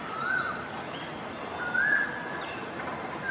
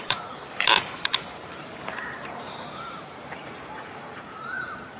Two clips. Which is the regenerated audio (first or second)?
second